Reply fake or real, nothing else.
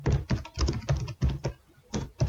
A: real